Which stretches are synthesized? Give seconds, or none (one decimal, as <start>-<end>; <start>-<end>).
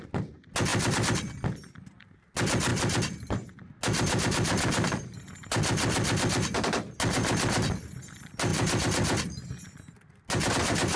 none